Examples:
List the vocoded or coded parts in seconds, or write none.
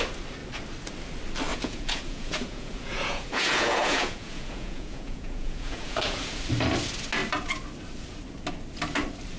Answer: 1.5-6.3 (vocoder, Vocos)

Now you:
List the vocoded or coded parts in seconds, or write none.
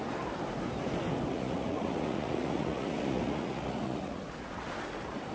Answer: 1.3-4.5 (vocoder, Vocos)